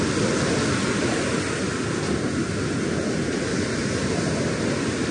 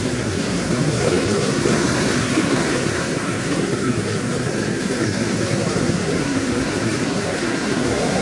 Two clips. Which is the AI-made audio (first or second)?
second